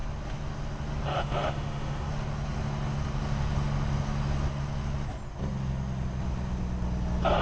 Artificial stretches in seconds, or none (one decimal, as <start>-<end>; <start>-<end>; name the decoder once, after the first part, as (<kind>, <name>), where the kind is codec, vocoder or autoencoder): 1.1-2.1 (autoencoder, DAC-VAE)